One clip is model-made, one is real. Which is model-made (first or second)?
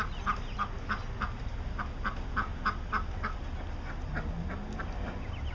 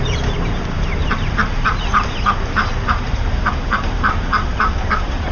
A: second